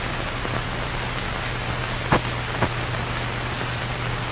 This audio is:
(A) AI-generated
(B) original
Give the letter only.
B